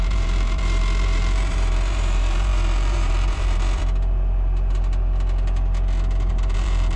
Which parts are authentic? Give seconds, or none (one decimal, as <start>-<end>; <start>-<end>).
3.8-6.3